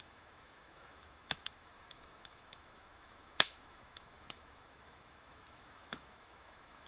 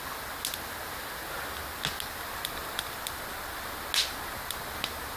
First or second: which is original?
second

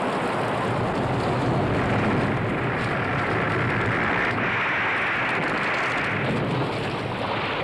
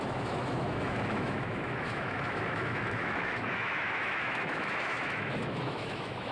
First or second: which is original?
first